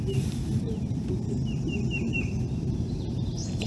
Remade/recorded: remade